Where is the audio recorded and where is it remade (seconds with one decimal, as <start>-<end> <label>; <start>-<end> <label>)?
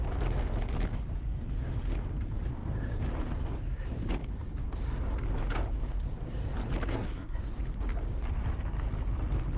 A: 0.0-6.9 recorded; 6.9-7.4 remade; 7.4-9.6 recorded